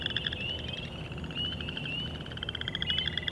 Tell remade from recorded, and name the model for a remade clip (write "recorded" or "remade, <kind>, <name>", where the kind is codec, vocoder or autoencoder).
recorded